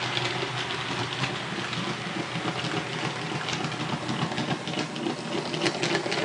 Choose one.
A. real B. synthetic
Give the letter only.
A